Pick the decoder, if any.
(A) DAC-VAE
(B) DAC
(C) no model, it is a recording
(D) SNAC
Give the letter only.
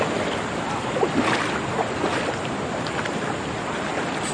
C